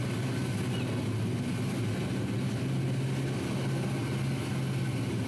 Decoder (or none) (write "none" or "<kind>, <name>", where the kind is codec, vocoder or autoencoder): none